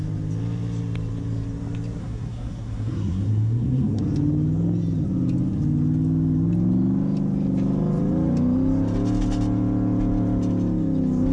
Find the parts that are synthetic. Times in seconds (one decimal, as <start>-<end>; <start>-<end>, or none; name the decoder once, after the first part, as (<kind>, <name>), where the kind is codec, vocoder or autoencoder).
2.0-4.0 (codec, SNAC)